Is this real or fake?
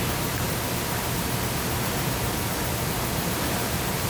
fake